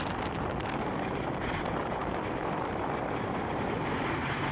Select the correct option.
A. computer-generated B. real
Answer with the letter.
B